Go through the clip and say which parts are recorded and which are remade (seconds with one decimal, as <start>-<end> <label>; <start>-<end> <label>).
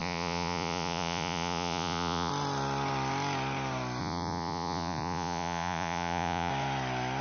0.0-2.3 remade; 2.3-4.0 recorded; 4.0-6.5 remade; 6.5-7.2 recorded